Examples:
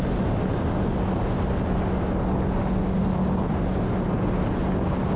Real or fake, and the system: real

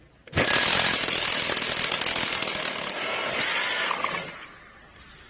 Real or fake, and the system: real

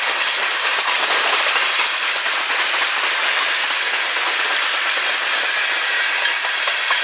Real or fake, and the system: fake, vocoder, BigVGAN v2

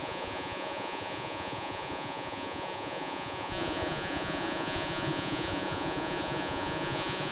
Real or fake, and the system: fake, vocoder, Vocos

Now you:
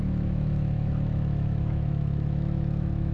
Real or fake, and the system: fake, autoencoder, DAC-VAE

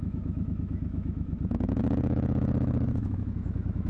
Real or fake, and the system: fake, autoencoder, DAC-VAE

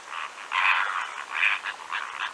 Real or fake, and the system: real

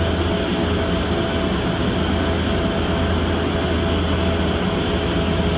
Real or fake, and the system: real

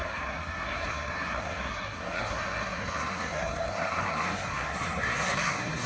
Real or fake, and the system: fake, codec, SNAC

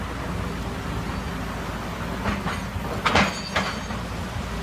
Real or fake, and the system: real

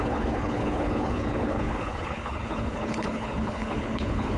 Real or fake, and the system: fake, codec, HILCodec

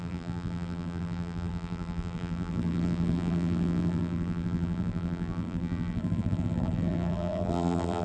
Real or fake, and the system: fake, vocoder, BigVGAN v2